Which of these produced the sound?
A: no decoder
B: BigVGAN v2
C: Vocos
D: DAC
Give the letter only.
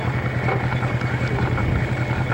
A